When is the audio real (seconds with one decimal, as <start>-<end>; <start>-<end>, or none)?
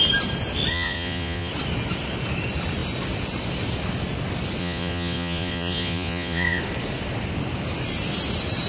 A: 0.0-0.7; 1.5-4.6; 6.6-8.7